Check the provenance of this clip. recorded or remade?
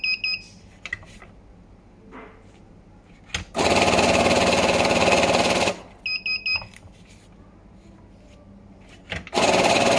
recorded